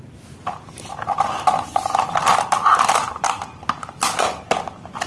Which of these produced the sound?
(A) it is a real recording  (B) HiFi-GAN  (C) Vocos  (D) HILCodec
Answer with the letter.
A